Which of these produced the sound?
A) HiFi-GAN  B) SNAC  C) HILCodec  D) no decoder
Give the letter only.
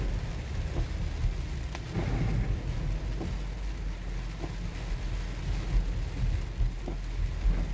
D